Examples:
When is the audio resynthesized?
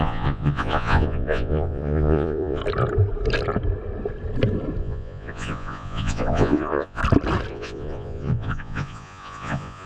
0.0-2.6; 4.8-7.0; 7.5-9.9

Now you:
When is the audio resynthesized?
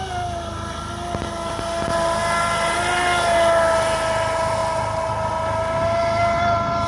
none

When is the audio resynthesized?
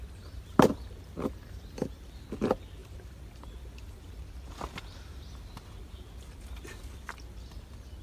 none